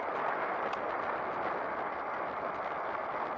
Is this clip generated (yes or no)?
no